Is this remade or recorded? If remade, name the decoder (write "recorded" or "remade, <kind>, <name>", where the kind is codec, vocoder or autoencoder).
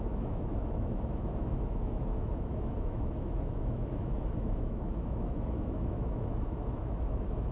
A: remade, autoencoder, DAC-VAE